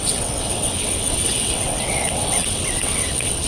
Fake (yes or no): yes